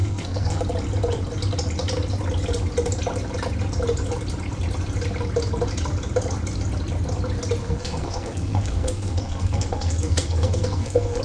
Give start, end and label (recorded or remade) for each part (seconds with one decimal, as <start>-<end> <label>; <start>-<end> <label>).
0.0-0.6 remade; 0.6-7.6 recorded; 7.6-11.2 remade